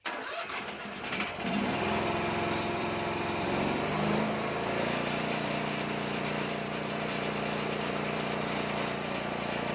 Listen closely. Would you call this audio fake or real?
fake